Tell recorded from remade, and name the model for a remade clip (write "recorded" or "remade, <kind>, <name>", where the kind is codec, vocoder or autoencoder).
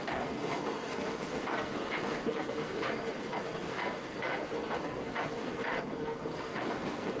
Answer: remade, codec, SNAC